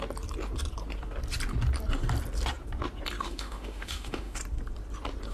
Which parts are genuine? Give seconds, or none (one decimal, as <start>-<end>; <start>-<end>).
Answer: 0.0-3.2; 4.4-5.3